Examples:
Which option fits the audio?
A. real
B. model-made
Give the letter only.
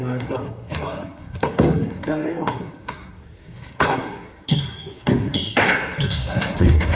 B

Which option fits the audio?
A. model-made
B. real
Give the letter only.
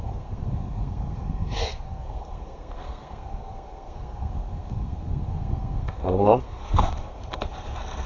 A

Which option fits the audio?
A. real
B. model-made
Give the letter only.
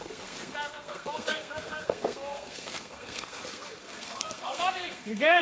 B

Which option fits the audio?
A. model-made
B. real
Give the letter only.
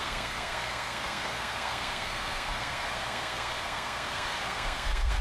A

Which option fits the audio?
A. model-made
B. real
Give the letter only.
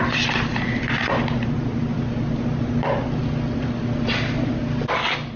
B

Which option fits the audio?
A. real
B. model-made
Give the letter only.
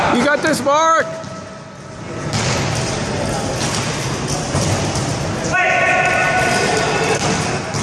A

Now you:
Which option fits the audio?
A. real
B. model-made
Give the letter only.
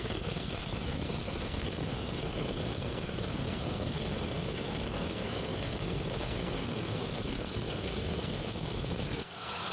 B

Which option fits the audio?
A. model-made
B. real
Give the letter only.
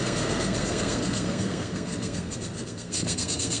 A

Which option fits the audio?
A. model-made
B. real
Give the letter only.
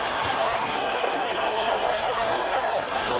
A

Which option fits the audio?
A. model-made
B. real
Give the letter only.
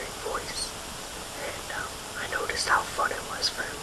B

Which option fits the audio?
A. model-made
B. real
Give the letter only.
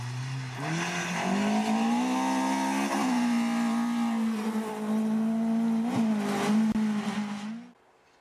B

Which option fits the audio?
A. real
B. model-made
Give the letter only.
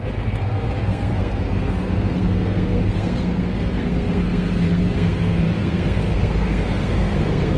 B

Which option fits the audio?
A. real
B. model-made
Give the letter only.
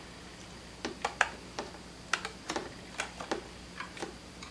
A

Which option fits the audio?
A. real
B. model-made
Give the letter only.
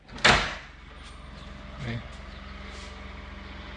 A